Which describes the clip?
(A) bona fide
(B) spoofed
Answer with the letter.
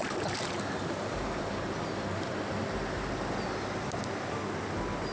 A